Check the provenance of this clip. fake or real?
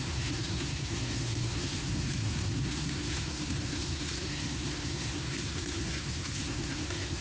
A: fake